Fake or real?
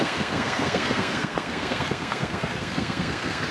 fake